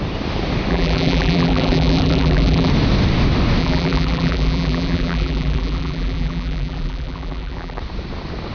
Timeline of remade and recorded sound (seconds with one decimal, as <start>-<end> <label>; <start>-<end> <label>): 0.0-0.7 recorded; 0.7-2.7 remade; 2.7-3.6 recorded; 3.6-7.8 remade; 7.8-8.5 recorded